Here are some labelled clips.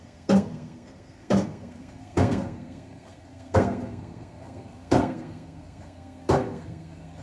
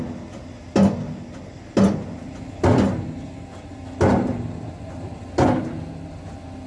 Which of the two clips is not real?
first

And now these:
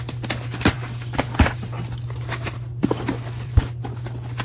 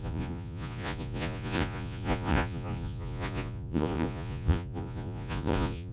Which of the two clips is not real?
second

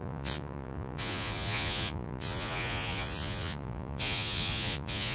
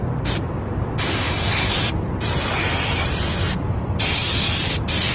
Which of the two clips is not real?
first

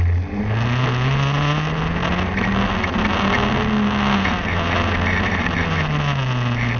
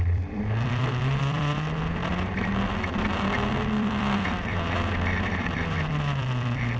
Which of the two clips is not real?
second